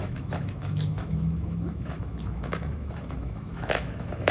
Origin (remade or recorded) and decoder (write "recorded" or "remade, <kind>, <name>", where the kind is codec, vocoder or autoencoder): remade, autoencoder, DAC-VAE